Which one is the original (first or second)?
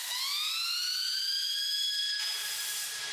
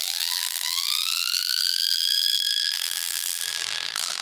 first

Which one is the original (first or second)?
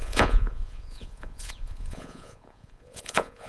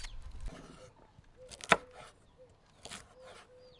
second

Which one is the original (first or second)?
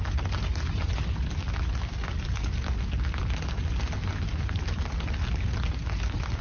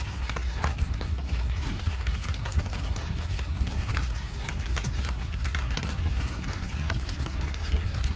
first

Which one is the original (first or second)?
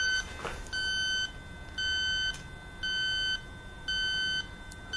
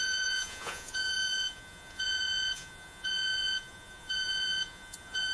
first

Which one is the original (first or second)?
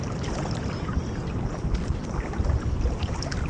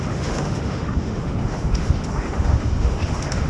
first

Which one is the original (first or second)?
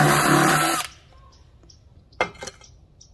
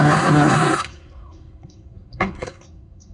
first